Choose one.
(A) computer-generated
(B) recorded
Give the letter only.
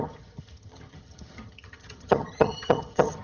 A